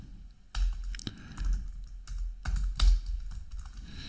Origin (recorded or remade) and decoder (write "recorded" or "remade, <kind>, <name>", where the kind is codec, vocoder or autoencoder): recorded